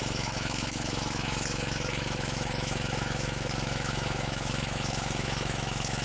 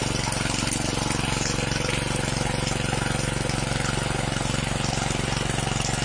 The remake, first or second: first